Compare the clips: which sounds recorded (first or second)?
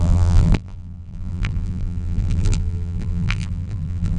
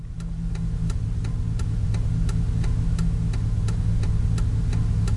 second